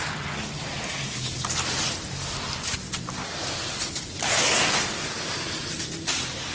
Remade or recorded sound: recorded